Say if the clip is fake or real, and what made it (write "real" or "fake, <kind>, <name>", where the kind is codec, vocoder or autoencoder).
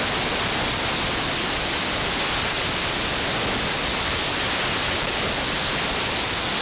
real